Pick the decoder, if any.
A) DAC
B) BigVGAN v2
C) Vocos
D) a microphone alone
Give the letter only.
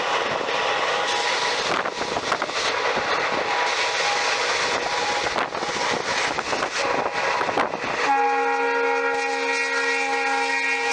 D